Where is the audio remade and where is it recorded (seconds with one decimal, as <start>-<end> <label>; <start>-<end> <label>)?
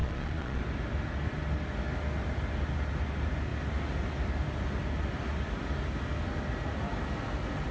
0.0-0.6 remade; 0.6-7.7 recorded